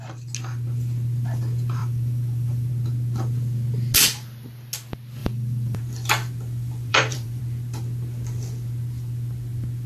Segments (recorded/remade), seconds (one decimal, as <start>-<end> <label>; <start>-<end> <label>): 0.0-1.8 recorded; 1.8-2.7 remade; 2.7-5.2 recorded; 5.2-5.8 remade; 5.8-6.9 recorded; 6.9-7.4 remade; 7.4-9.9 recorded